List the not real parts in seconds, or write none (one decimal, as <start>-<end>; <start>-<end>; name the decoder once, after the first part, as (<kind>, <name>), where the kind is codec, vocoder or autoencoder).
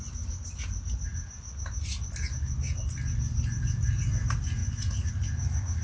none